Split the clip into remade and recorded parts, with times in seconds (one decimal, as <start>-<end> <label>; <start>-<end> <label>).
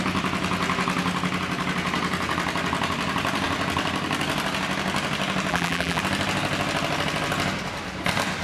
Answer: 0.0-5.5 recorded; 5.5-6.0 remade; 6.0-8.4 recorded